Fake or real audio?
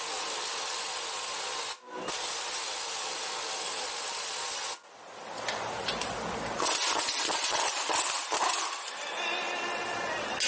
real